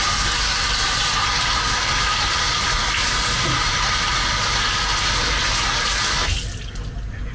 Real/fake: real